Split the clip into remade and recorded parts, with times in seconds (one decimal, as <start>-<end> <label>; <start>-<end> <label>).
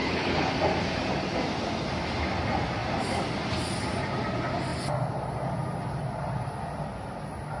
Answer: 0.0-0.5 remade; 0.5-7.6 recorded